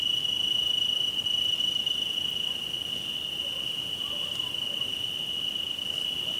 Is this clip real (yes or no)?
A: yes